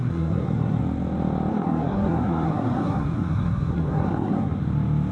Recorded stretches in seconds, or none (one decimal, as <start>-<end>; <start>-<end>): 0.8-1.5; 4.6-5.1